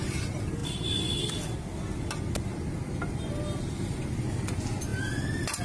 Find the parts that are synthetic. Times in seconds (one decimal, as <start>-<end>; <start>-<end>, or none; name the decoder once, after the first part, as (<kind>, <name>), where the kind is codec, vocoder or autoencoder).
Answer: none